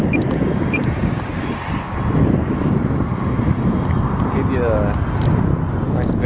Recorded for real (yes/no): yes